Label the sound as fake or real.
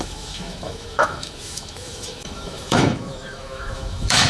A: fake